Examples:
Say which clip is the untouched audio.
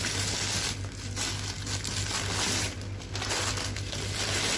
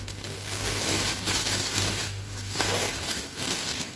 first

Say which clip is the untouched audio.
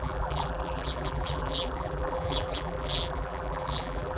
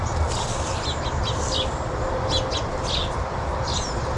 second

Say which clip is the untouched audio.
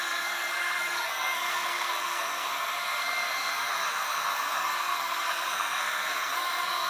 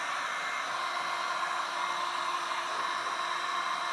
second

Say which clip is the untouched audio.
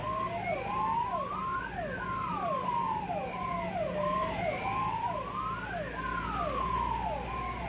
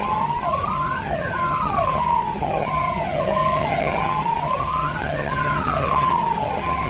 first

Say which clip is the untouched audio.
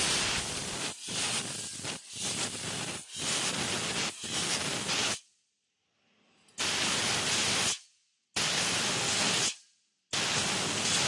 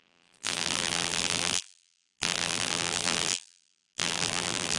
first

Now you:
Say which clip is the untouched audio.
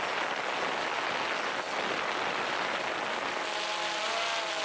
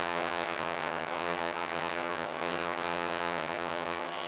first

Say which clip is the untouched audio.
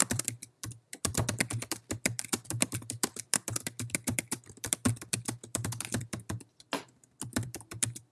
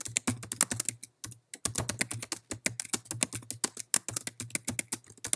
second